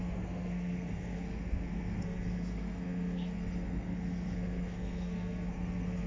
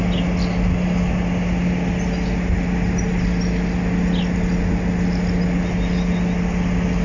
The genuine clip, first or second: second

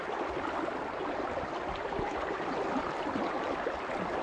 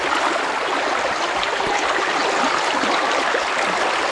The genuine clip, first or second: second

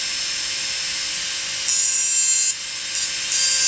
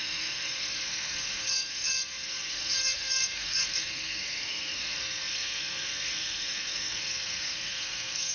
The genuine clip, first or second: first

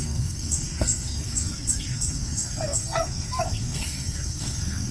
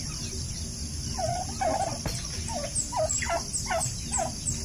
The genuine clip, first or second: second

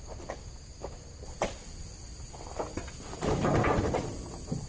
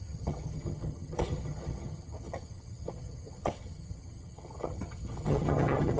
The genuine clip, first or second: first